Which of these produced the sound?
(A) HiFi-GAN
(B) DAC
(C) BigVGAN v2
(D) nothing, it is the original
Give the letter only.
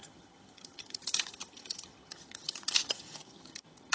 A